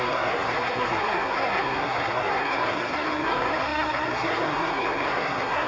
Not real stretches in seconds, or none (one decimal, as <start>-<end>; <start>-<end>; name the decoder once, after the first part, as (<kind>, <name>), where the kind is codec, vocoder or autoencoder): 0.0-5.7 (codec, SNAC)